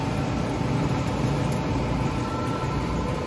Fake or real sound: real